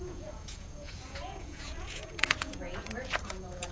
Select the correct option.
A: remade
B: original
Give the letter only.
A